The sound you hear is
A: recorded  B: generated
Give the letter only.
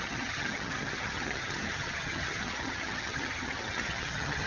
B